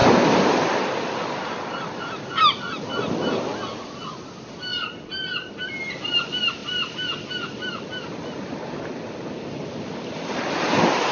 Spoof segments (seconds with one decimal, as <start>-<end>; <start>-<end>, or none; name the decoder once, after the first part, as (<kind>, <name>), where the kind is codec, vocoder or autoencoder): none